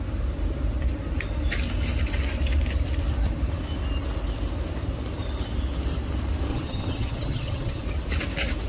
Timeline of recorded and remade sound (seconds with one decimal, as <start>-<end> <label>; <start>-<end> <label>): 0.0-6.5 recorded; 6.5-7.8 remade; 7.8-8.7 recorded